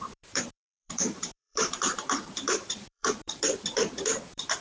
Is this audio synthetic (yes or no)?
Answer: yes